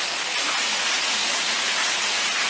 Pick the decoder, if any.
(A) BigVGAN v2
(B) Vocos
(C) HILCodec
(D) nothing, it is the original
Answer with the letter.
B